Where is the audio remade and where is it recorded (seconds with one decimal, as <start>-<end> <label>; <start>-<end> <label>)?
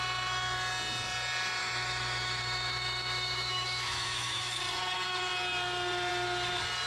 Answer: 0.0-1.6 recorded; 1.6-4.6 remade; 4.6-6.9 recorded